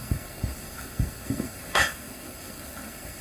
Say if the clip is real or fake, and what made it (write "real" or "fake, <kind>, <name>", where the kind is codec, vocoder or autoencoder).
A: fake, codec, SNAC